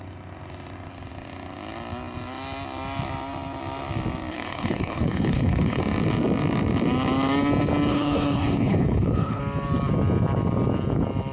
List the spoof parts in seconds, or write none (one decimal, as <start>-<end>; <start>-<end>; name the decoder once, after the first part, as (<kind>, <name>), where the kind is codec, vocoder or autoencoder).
4.3-5.8 (codec, HILCodec); 7.9-9.4